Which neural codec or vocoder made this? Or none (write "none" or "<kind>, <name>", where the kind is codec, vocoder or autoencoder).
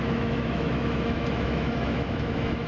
autoencoder, DAC-VAE